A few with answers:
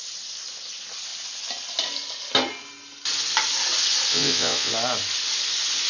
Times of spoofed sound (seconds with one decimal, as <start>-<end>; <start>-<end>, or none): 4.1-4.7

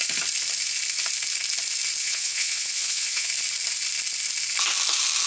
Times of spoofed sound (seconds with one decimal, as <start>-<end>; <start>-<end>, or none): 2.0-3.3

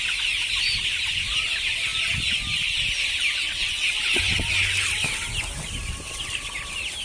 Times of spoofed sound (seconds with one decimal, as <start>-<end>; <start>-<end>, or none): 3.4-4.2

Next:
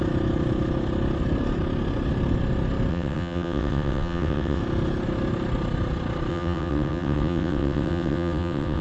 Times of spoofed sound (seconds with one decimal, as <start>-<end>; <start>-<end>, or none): 2.9-4.6; 6.3-8.8

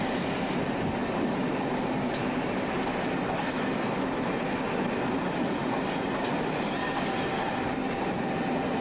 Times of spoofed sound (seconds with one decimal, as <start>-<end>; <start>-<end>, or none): none

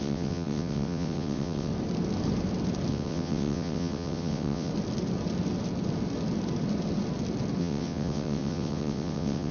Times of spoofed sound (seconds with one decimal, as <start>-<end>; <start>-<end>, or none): 0.0-1.7; 2.9-4.7; 7.6-9.5